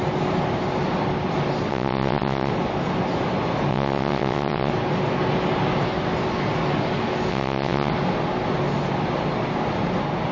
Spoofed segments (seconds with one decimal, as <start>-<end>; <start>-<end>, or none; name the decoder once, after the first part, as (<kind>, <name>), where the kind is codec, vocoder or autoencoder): 1.7-2.5 (vocoder, WaveNeXt); 3.7-4.7; 7.3-7.9